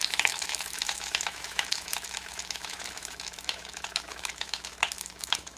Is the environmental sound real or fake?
fake